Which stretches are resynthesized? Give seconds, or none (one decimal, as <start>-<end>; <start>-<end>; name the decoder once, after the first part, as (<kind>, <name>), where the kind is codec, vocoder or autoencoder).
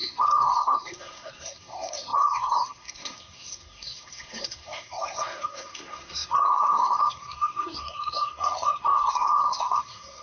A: 0.0-10.2 (codec, SNAC)